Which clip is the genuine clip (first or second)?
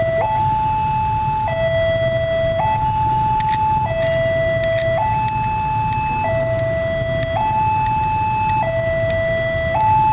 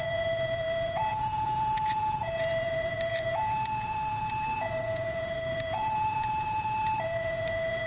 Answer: first